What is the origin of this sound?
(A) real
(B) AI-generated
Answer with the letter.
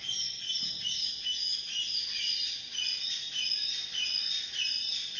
A